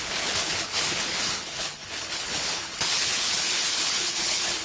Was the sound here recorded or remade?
remade